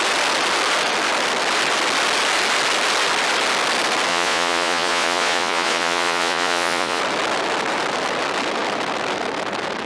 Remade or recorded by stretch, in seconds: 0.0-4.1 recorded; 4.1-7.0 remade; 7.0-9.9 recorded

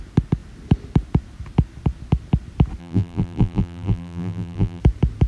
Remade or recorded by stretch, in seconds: 0.0-2.8 recorded; 2.8-4.8 remade; 4.8-5.3 recorded

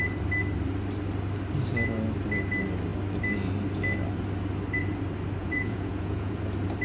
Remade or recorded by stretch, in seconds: 0.0-5.4 recorded; 5.4-6.3 remade; 6.3-6.8 recorded